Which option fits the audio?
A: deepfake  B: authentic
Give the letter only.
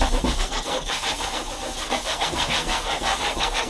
A